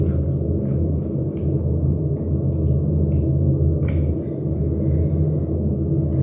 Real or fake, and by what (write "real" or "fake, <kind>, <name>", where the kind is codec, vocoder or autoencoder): real